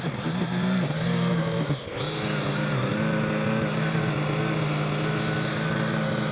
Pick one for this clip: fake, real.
real